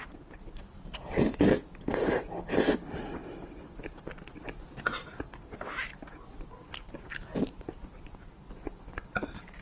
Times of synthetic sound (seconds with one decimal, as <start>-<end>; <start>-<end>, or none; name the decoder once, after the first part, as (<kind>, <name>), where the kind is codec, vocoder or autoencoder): none